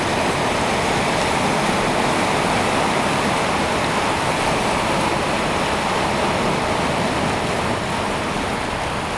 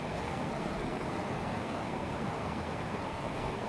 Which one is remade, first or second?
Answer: second